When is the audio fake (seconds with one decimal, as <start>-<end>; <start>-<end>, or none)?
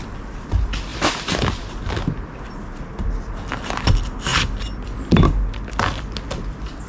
none